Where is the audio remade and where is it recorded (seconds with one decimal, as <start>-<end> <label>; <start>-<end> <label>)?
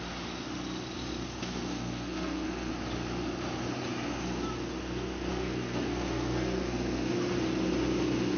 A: 0.0-1.4 recorded; 1.4-2.7 remade; 2.7-5.3 recorded; 5.3-7.1 remade; 7.1-8.4 recorded